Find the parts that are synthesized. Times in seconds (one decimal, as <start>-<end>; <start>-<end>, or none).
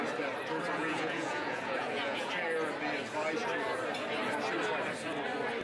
0.8-2.3